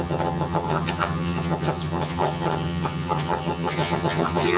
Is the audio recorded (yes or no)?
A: no